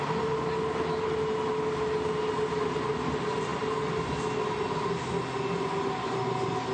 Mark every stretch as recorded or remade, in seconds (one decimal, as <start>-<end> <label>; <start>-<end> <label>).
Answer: 0.0-6.7 recorded